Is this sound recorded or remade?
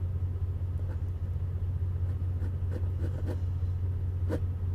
recorded